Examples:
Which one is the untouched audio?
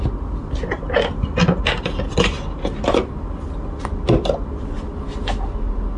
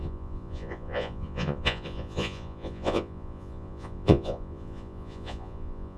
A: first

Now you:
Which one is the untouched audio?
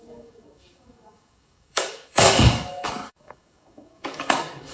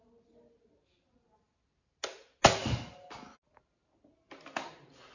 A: second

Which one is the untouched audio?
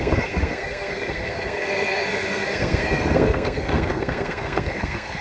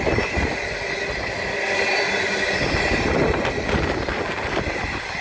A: second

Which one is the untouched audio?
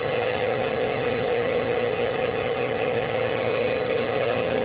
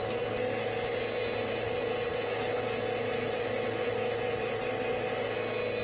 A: second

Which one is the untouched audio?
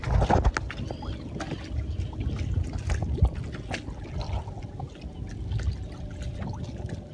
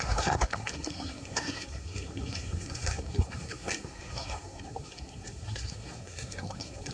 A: first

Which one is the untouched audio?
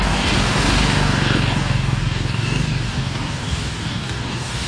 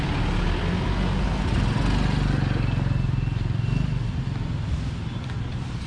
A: second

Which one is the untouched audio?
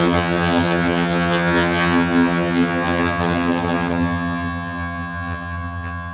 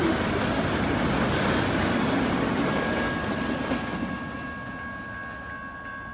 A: second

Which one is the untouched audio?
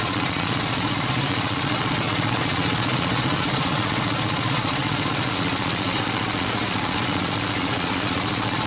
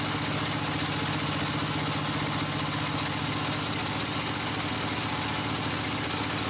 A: second